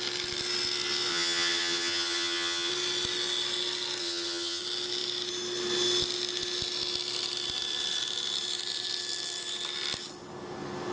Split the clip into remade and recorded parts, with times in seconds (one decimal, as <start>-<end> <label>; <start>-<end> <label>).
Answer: 0.0-1.1 recorded; 1.1-2.7 remade; 2.7-4.0 recorded; 4.0-4.6 remade; 4.6-10.9 recorded